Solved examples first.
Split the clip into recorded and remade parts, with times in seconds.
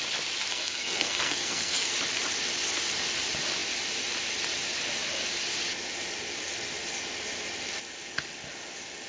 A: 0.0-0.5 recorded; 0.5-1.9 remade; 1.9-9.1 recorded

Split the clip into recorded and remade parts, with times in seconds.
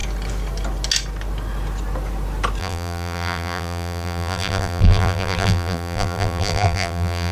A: 0.0-2.6 recorded; 2.6-7.3 remade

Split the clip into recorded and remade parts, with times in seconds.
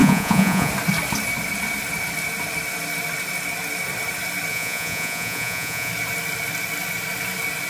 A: 0.0-0.7 remade; 0.7-4.5 recorded; 4.5-5.9 remade; 5.9-7.7 recorded